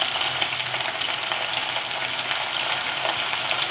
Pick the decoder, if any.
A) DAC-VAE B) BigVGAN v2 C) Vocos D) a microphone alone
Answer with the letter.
D